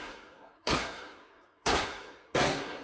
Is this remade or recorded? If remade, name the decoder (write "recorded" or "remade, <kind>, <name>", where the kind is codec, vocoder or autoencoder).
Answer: remade, codec, SNAC